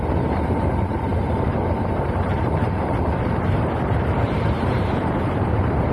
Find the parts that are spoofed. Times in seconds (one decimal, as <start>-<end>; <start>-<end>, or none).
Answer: 0.0-1.1; 2.0-5.9